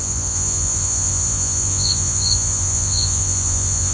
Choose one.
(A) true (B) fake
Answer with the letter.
B